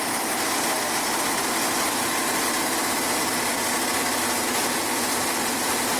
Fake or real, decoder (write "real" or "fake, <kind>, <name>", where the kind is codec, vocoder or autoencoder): real